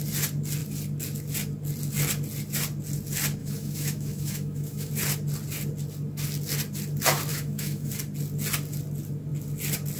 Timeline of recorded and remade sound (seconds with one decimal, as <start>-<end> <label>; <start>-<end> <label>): 0.0-3.4 recorded; 3.4-4.9 remade; 4.9-7.3 recorded; 7.3-7.9 remade; 7.9-10.0 recorded